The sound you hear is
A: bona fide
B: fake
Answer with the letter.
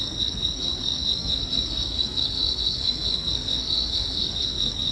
B